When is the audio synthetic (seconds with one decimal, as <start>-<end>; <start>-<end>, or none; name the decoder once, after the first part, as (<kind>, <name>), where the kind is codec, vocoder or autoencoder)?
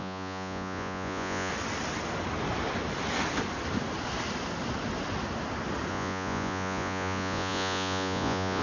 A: 0.0-1.5 (vocoder, Vocos); 5.9-8.6